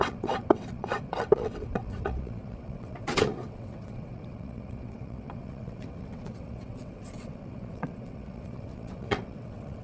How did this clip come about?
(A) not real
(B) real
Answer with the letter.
A